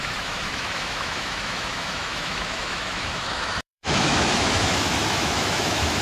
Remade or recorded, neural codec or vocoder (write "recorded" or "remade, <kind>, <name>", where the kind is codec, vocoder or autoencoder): remade, autoencoder, DAC-VAE